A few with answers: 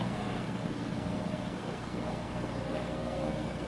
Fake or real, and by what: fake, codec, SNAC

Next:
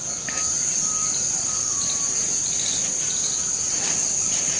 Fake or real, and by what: real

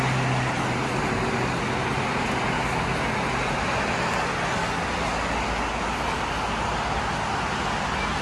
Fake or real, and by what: real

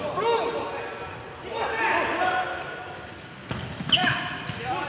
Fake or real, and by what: real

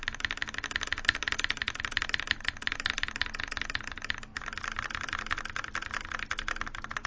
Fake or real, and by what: real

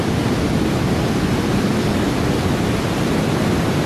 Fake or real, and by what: real